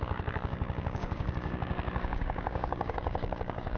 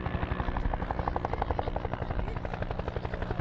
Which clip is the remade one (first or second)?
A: first